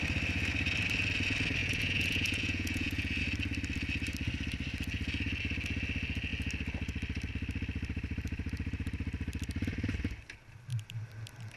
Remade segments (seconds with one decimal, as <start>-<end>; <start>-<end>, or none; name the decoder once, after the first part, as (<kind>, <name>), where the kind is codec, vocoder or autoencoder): 1.6-3.2 (vocoder, Vocos)